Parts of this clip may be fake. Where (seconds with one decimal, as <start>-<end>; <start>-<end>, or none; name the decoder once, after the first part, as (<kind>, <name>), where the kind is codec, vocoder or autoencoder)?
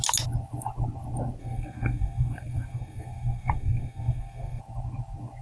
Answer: 1.4-4.6 (codec, SNAC)